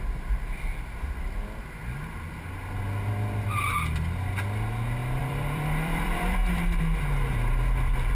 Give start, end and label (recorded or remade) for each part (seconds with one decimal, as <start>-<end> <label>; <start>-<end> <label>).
0.0-5.0 recorded; 5.0-6.8 remade; 6.8-8.1 recorded